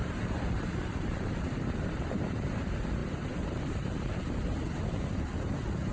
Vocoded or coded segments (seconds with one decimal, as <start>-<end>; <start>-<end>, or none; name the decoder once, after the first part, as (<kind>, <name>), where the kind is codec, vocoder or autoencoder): 0.0-5.9 (vocoder, BigVGAN v2)